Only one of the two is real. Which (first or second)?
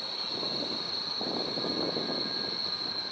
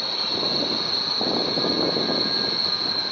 second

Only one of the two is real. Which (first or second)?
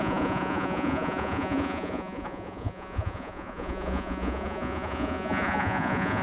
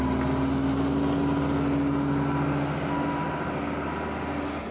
second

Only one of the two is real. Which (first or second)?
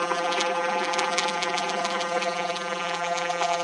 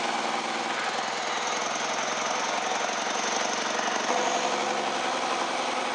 second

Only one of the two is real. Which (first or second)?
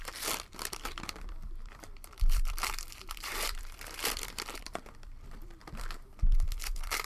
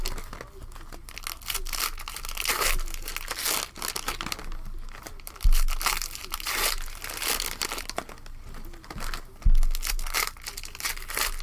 second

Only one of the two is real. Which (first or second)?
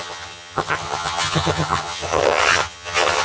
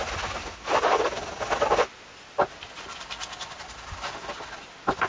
second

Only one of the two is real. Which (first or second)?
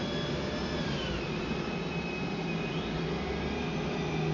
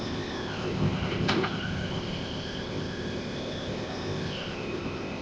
first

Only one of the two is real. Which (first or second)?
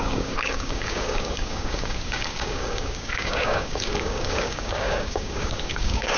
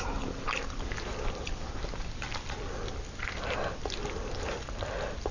second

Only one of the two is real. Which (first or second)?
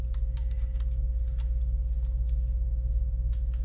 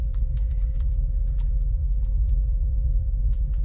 first